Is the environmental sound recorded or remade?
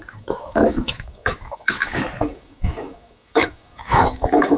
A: remade